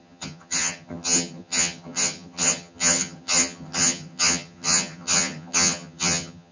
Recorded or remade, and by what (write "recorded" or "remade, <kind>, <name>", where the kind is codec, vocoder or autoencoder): remade, vocoder, HiFi-GAN